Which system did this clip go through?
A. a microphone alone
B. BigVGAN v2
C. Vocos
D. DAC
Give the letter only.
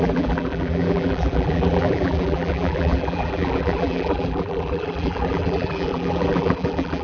B